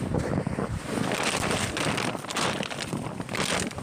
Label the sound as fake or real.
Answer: real